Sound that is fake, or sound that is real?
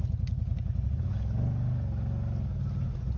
real